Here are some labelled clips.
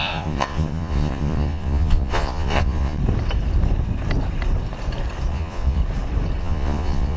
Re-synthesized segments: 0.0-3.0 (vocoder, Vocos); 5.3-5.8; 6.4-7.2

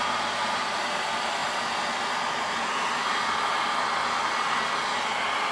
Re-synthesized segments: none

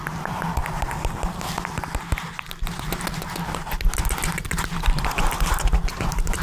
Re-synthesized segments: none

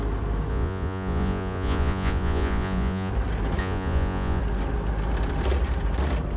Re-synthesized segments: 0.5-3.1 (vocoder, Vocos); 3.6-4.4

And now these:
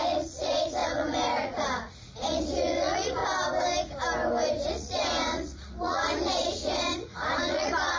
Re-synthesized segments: 0.0-3.2 (vocoder, Vocos); 4.7-8.0

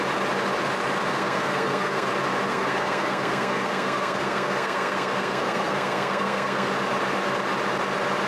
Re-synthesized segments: 1.1-2.1 (codec, SNAC); 2.5-6.7